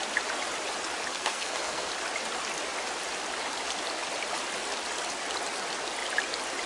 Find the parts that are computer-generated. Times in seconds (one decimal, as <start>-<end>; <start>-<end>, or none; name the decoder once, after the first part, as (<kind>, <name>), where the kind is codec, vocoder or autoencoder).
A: 1.1-1.9 (codec, SNAC)